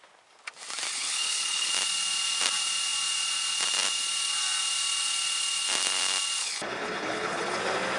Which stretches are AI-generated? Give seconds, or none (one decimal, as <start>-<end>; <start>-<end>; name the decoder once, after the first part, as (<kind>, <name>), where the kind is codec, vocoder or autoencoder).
0.9-1.7 (codec, HILCodec); 6.4-7.6